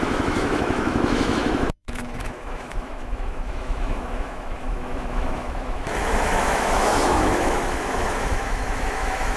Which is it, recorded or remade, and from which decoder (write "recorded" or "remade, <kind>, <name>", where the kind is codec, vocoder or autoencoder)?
remade, autoencoder, DAC-VAE